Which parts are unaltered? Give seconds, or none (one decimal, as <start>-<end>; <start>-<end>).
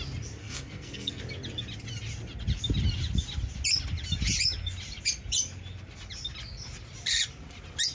0.0-0.4; 1.2-7.9